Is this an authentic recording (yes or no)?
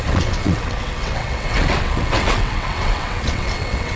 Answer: no